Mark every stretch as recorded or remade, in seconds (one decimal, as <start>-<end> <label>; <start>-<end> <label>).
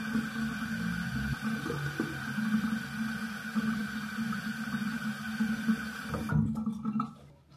0.0-5.1 recorded; 5.1-5.7 remade; 5.7-7.6 recorded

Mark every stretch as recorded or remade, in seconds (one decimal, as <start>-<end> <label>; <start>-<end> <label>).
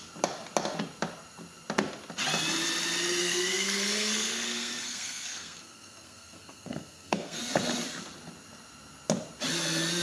0.0-3.2 recorded; 3.2-7.4 remade; 7.4-10.0 recorded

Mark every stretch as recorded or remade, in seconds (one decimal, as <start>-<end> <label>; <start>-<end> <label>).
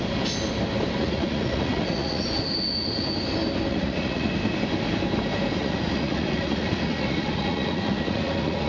0.0-1.0 recorded; 1.0-2.2 remade; 2.2-3.7 recorded; 3.7-4.3 remade; 4.3-5.6 recorded; 5.6-8.7 remade